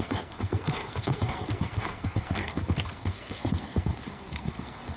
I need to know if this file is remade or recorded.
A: remade